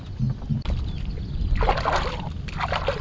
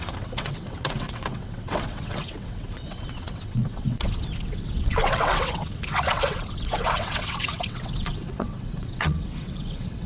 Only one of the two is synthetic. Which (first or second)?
second